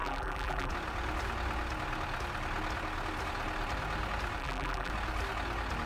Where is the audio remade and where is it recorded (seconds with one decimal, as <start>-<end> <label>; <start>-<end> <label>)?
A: 0.0-0.7 remade; 0.7-4.4 recorded; 4.4-4.9 remade; 4.9-5.9 recorded